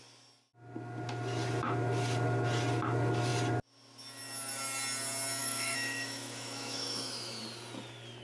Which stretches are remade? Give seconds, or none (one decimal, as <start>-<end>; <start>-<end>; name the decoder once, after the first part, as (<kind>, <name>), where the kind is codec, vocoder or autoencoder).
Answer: 5.4-7.4 (autoencoder, DAC-VAE)